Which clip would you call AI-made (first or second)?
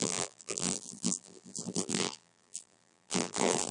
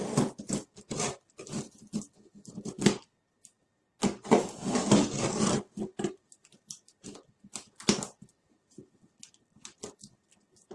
first